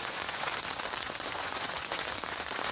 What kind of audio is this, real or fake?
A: fake